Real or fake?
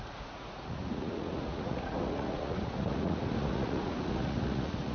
fake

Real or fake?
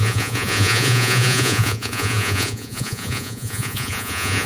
fake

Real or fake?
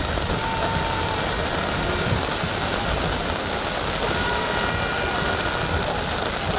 real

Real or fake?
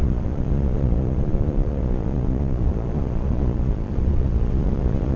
fake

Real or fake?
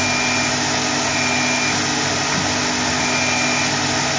real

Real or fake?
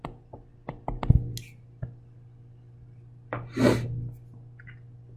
real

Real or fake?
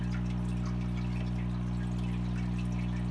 real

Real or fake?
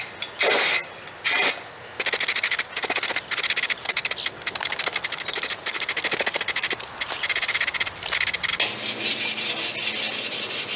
real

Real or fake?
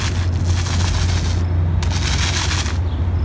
real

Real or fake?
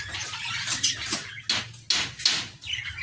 real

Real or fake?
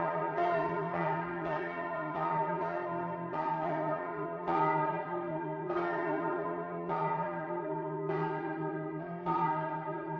fake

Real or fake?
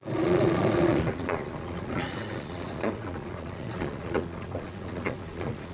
fake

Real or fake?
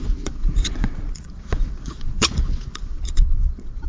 fake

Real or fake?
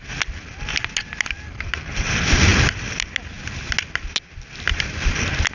real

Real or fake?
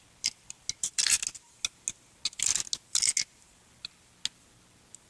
real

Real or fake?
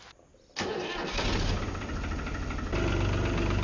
real